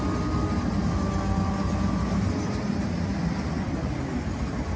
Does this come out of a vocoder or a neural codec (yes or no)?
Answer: no